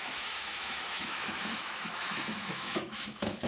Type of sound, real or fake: fake